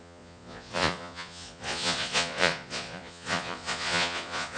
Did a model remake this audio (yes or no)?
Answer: yes